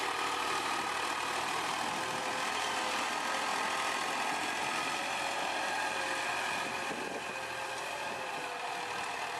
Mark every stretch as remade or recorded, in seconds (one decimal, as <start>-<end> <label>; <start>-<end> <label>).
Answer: 0.0-9.4 recorded